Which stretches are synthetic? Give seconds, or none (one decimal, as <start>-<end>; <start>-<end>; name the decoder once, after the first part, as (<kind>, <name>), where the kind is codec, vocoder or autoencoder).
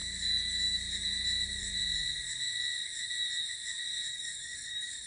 4.1-5.1 (codec, DAC)